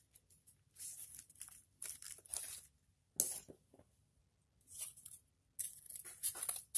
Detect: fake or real real